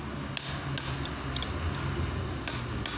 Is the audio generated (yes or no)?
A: no